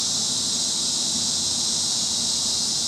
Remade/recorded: recorded